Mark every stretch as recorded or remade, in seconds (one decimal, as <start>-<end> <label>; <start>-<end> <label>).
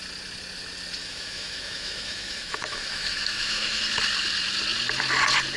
0.0-1.0 recorded; 1.0-3.8 remade; 3.8-5.6 recorded